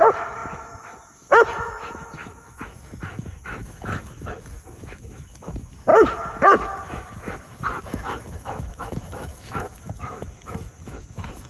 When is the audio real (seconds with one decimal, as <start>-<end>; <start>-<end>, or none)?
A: none